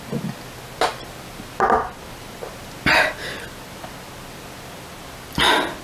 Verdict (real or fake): real